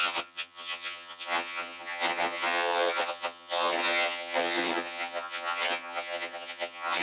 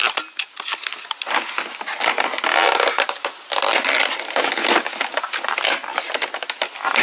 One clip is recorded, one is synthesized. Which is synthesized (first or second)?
first